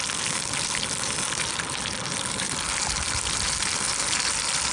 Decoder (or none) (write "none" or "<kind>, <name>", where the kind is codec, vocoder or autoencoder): none